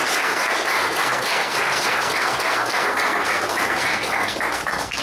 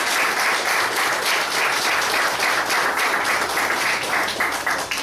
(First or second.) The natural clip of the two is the second